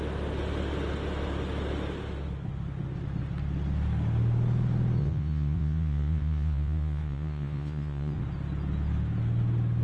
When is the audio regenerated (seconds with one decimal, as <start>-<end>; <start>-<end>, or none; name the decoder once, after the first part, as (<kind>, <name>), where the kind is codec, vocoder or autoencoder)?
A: 5.0-8.2 (vocoder, Vocos)